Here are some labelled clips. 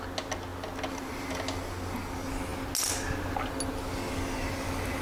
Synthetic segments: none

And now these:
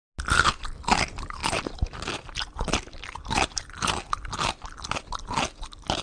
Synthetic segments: none

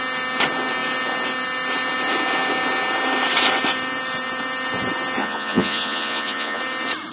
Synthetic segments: 5.2-6.6 (vocoder, Vocos)

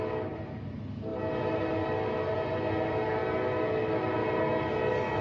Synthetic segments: none

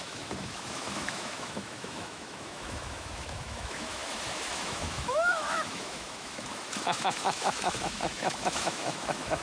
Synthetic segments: 0.0-9.4 (autoencoder, DAC-VAE)

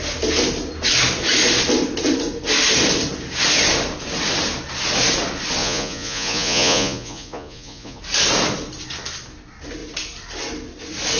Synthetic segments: 5.6-8.0 (vocoder, Vocos)